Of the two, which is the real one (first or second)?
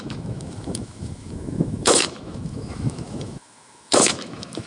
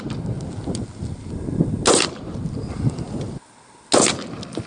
second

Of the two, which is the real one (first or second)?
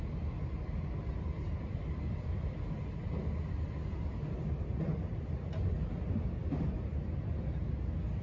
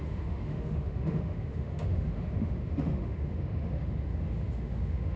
first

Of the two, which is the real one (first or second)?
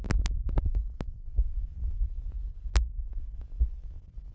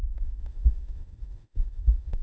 first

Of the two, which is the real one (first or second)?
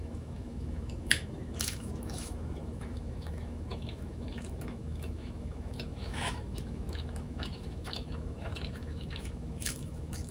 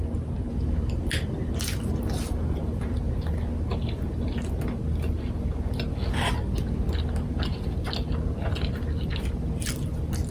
second